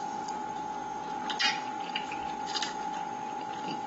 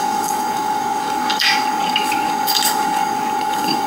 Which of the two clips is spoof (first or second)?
second